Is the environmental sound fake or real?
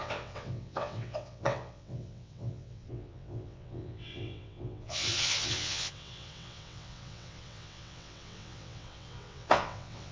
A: fake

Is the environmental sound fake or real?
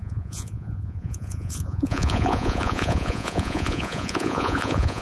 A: fake